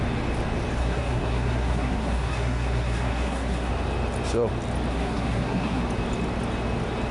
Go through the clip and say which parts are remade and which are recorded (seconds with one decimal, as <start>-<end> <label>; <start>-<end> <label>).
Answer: 0.0-0.8 recorded; 0.8-3.7 remade; 3.7-4.9 recorded; 4.9-5.8 remade; 5.8-7.1 recorded